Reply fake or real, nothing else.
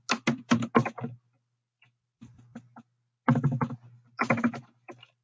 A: real